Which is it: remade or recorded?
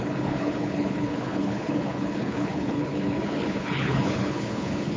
remade